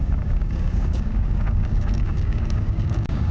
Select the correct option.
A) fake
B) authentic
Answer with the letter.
A